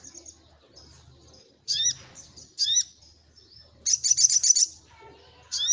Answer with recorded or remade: recorded